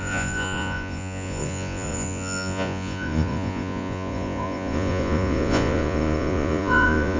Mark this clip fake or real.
fake